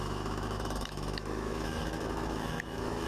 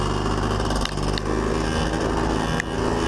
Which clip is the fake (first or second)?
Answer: first